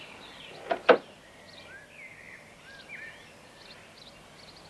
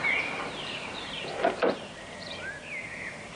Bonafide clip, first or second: first